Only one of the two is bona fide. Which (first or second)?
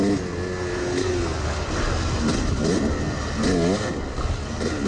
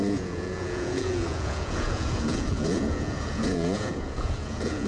first